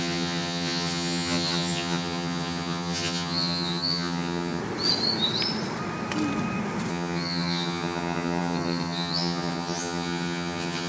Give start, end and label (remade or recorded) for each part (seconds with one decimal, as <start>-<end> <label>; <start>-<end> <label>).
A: 0.0-4.6 remade; 4.6-6.9 recorded; 6.9-10.9 remade